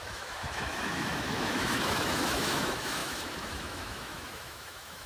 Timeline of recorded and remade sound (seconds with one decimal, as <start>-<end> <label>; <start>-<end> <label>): 0.0-5.1 remade